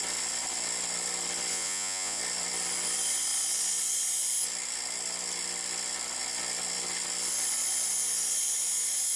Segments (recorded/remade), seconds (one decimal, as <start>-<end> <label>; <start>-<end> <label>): 0.0-1.5 recorded; 1.5-2.2 remade; 2.2-9.2 recorded